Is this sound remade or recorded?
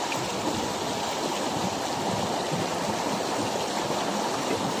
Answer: recorded